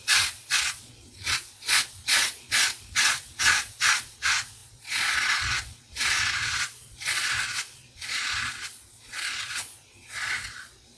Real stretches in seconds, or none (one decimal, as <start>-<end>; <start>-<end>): none